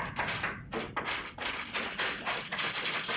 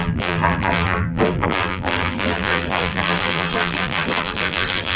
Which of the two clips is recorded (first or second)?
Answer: first